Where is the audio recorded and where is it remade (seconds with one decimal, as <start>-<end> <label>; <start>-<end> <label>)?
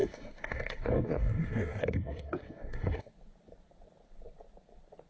0.0-3.1 remade; 3.1-5.1 recorded